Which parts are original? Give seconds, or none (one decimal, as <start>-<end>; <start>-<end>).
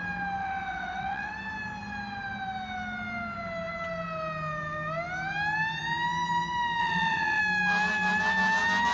0.0-0.4; 1.3-6.8; 7.4-8.9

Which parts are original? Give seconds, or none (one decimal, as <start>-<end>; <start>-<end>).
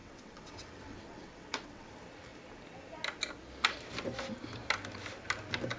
1.9-5.8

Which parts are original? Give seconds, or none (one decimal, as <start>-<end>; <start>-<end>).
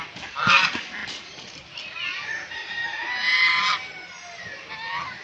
0.0-5.2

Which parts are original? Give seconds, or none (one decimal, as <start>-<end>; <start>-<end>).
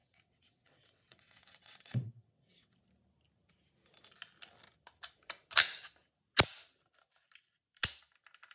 2.8-8.5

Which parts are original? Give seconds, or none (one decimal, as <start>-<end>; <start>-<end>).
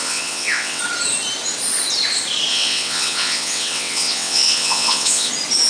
0.8-2.5; 5.3-5.7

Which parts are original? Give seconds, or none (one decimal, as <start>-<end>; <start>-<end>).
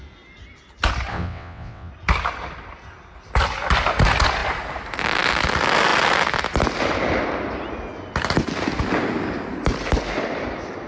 0.0-1.1; 1.9-10.9